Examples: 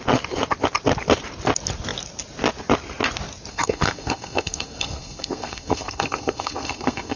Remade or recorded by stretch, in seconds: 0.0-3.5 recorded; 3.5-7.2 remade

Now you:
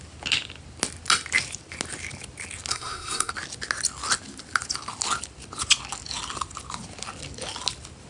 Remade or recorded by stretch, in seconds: 0.0-2.7 recorded; 2.7-3.3 remade; 3.3-8.1 recorded